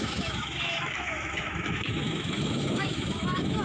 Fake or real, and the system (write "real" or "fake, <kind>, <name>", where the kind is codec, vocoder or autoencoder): fake, autoencoder, DAC-VAE